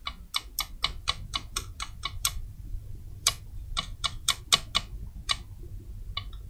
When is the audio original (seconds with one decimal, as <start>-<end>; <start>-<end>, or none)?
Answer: 0.0-1.0; 4.4-6.5